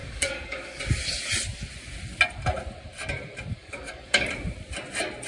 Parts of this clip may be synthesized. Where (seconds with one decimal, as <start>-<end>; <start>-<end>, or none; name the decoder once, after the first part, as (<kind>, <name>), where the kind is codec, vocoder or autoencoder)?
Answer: 0.0-0.8 (codec, DAC); 3.5-4.3